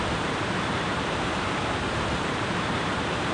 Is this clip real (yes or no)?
no